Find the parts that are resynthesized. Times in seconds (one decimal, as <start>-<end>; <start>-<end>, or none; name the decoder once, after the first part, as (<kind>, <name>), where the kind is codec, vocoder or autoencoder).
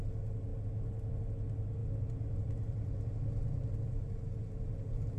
1.8-5.2 (vocoder, BigVGAN v2)